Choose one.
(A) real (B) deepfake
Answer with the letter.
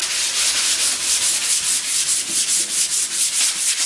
A